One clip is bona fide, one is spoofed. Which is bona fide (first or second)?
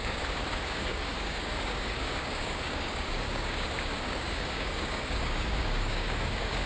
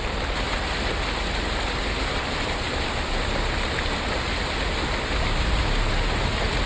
second